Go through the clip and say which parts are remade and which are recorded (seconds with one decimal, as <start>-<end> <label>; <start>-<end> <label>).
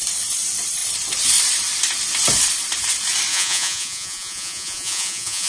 0.0-3.3 recorded; 3.3-5.5 remade